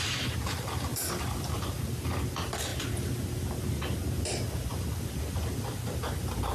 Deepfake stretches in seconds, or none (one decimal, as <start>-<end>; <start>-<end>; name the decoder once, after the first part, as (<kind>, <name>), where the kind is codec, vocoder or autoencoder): 0.9-1.6 (vocoder, BigVGAN v2)